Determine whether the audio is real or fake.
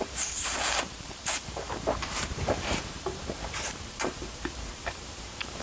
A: fake